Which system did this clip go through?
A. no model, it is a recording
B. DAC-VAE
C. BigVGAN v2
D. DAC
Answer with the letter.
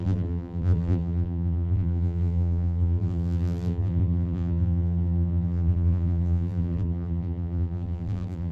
C